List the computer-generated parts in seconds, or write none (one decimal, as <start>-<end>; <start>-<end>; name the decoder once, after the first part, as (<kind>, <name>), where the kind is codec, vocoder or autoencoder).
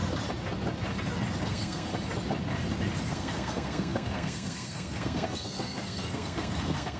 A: 1.4-1.9 (codec, SNAC); 3.1-7.0